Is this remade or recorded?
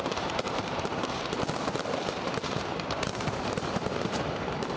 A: remade